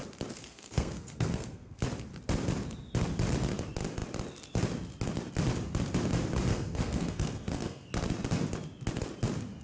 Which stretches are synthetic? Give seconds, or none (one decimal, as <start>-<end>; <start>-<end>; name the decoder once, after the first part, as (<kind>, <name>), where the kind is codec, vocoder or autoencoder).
0.4-1.8 (codec, SNAC); 6.5-7.9